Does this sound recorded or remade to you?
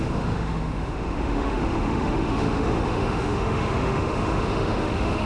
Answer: remade